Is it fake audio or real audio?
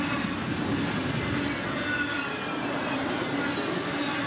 real